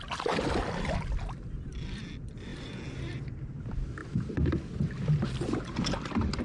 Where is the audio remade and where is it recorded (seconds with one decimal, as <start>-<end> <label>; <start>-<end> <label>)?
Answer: 0.0-6.4 recorded